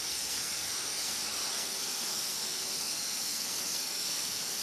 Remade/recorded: remade